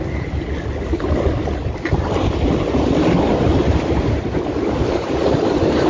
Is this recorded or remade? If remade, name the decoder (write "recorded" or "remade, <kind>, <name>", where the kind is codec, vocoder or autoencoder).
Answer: recorded